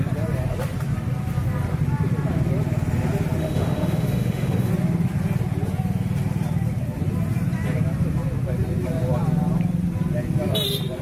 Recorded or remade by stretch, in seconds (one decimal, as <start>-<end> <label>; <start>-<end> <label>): 0.0-3.4 recorded; 3.4-4.7 remade; 4.7-11.0 recorded